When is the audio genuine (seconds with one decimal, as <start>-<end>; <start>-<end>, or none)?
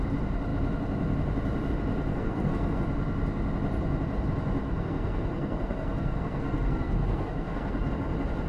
0.0-2.1; 2.8-4.6; 7.9-8.5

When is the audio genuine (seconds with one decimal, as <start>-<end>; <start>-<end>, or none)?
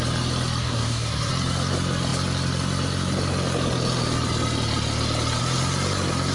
0.0-0.6; 1.3-6.3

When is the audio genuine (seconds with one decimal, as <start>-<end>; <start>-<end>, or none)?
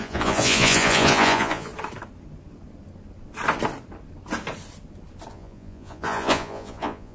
1.7-5.3